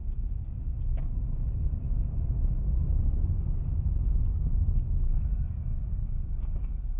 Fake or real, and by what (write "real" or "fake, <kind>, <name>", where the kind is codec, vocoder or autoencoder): real